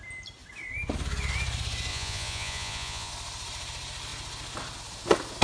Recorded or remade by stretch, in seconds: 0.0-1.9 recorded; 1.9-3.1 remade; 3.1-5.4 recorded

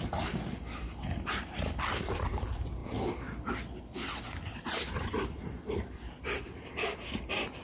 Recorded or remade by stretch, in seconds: 0.0-7.6 recorded

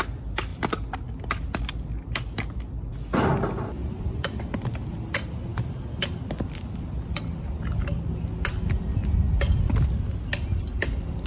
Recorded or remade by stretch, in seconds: 0.0-11.3 recorded

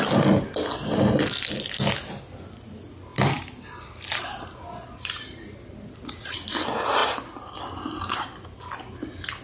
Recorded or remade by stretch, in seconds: 0.0-9.4 recorded

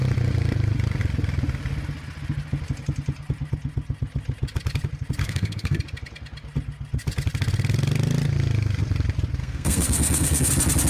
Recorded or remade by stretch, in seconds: 0.0-5.2 recorded; 5.2-5.8 remade; 5.8-9.4 recorded; 9.4-10.5 remade; 10.5-10.9 recorded

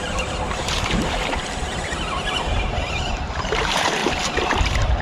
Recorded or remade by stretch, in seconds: 0.0-1.9 remade; 1.9-2.5 recorded; 2.5-4.0 remade; 4.0-4.6 recorded; 4.6-5.0 remade